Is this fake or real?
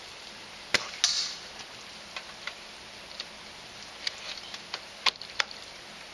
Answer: real